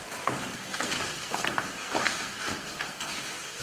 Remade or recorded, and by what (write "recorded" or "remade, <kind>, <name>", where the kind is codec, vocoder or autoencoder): remade, codec, SNAC